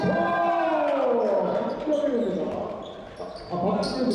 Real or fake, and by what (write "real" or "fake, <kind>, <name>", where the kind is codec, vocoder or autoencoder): real